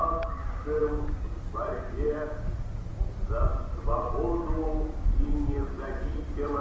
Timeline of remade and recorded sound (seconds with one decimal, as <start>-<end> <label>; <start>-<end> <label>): 0.0-6.6 recorded